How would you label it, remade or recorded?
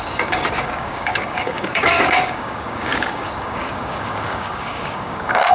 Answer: remade